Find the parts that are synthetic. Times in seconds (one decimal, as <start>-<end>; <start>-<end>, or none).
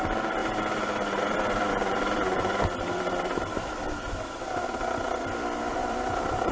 0.4-4.0; 5.6-6.5